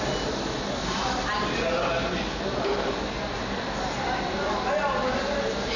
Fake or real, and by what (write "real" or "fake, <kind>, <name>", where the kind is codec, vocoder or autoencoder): real